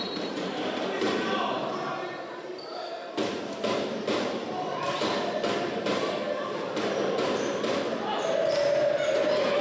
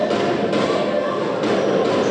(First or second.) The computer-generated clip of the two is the first